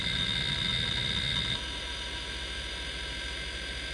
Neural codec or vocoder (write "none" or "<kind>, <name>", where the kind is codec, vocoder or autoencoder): none